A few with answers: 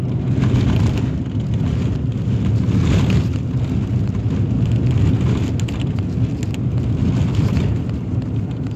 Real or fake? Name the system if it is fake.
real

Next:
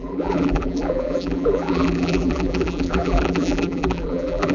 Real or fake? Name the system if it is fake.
fake, vocoder, BigVGAN v2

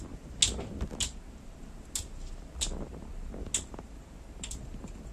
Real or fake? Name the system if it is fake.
real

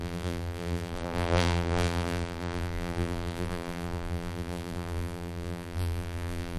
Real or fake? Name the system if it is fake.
fake, vocoder, BigVGAN v2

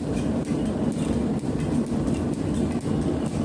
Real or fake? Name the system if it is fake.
real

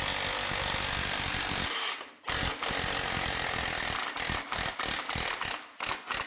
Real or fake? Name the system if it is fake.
real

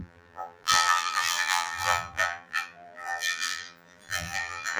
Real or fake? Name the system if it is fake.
fake, vocoder, BigVGAN v2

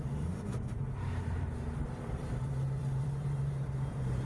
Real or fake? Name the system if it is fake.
fake, vocoder, BigVGAN v2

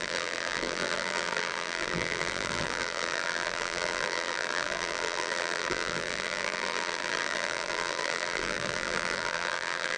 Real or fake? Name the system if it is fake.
fake, vocoder, BigVGAN v2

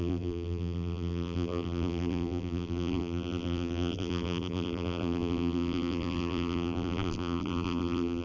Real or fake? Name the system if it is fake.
fake, vocoder, BigVGAN v2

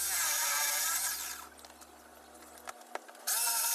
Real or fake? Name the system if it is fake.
real